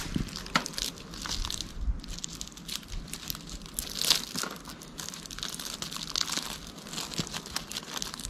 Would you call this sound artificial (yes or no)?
no